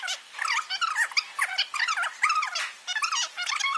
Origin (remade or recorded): recorded